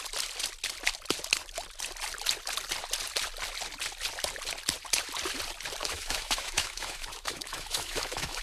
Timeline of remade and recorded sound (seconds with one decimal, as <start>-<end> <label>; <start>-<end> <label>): 0.0-5.8 recorded; 5.8-8.4 remade